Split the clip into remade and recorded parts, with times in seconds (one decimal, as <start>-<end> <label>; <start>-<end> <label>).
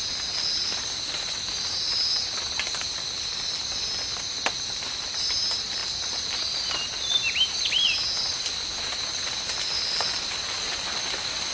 0.0-11.5 recorded